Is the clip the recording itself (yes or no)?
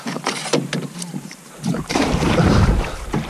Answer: no